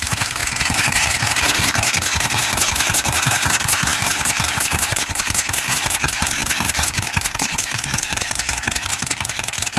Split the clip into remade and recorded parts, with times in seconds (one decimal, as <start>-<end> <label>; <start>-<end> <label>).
0.0-9.8 remade